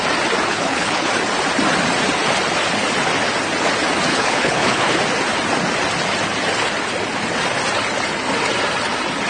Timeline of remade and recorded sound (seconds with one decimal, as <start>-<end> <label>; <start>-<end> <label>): 0.0-0.5 recorded; 0.5-1.1 remade; 1.1-4.1 recorded; 4.1-5.0 remade; 5.0-9.3 recorded